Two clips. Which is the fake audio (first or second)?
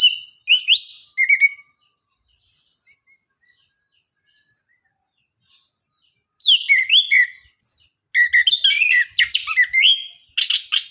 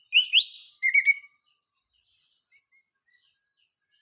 second